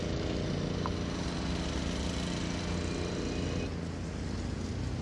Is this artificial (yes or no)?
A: no